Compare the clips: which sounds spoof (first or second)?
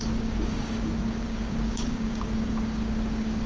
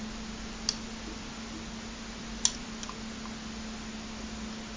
first